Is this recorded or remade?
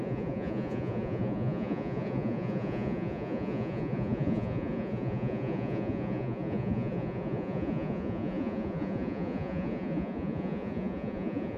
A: remade